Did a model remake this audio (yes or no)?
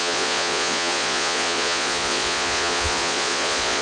yes